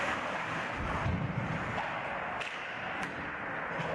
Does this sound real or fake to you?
real